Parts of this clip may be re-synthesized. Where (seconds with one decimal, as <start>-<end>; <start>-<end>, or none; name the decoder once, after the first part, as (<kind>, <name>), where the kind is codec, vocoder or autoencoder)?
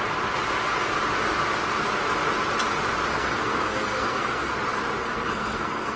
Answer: 3.1-4.5 (codec, SNAC); 5.0-6.0